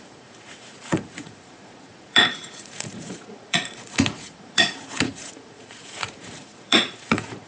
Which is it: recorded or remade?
remade